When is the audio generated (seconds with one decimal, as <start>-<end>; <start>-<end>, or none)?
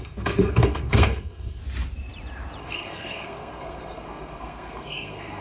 0.0-1.6; 2.6-5.4